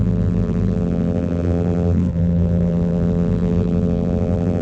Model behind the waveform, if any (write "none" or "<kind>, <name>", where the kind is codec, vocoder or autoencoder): vocoder, BigVGAN v2